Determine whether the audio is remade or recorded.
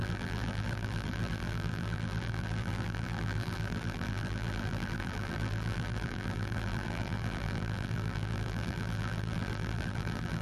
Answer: remade